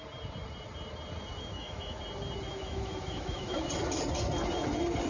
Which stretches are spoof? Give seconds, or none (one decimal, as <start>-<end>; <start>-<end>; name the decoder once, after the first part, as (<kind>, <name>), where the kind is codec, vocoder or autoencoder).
1.5-2.0 (autoencoder, DAC-VAE); 2.5-3.7